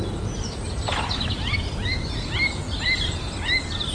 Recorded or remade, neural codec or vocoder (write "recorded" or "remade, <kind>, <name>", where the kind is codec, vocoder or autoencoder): recorded